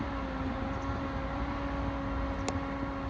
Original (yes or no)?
yes